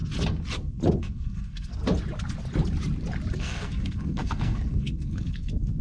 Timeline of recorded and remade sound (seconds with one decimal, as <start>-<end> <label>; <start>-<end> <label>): 0.0-1.0 recorded; 1.0-1.8 remade; 1.8-3.3 recorded; 3.3-5.8 remade